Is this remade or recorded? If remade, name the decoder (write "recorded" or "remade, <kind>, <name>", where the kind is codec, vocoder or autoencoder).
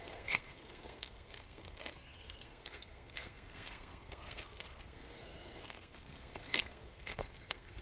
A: remade, codec, SNAC